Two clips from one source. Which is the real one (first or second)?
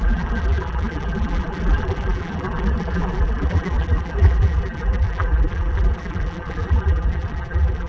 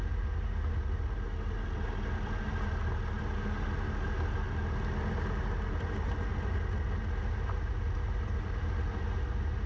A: second